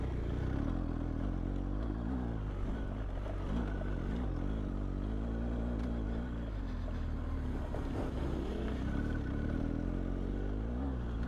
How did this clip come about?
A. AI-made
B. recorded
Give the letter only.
B